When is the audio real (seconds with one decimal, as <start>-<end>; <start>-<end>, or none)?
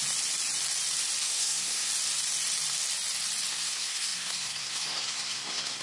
0.0-1.2; 1.9-3.5